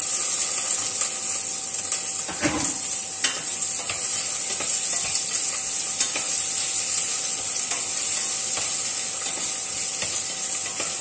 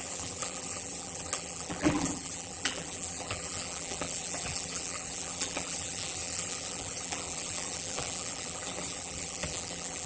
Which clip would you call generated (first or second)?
second